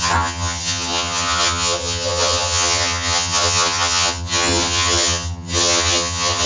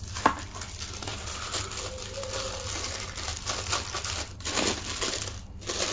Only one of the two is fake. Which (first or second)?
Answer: first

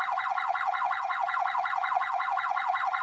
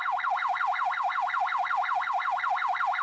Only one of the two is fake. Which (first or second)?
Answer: first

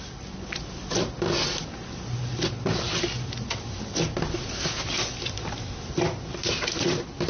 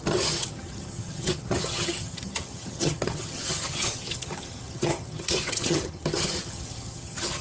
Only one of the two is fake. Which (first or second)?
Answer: second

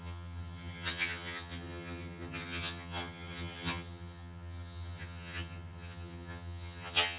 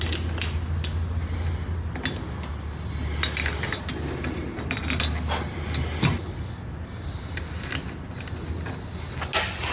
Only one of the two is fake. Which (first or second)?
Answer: first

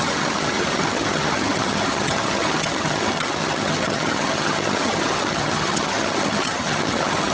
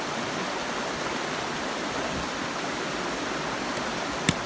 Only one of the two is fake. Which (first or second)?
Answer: first